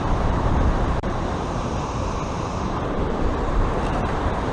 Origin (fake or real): fake